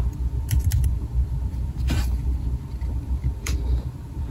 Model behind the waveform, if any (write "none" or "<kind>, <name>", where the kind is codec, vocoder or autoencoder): vocoder, BigVGAN v2